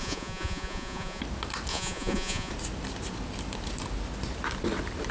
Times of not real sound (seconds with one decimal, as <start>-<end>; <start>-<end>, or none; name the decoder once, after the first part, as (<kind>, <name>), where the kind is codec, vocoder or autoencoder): 0.0-1.2 (vocoder, Vocos); 1.7-2.5